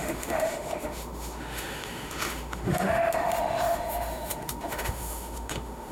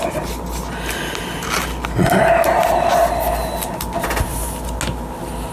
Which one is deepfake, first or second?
first